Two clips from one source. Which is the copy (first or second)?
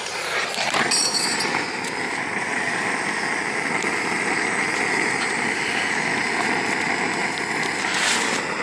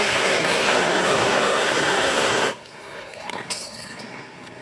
second